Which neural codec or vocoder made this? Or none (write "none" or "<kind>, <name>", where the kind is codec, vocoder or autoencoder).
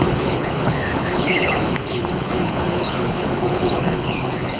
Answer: codec, HILCodec